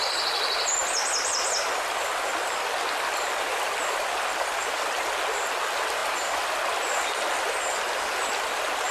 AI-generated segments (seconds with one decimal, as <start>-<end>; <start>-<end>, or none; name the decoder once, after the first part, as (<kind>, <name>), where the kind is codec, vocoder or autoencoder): none